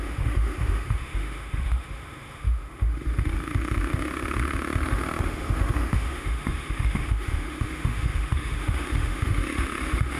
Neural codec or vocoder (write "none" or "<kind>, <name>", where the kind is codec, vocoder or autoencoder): autoencoder, DAC-VAE